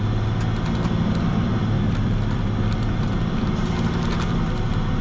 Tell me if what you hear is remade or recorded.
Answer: recorded